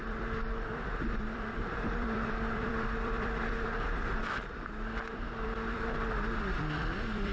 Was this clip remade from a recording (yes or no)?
yes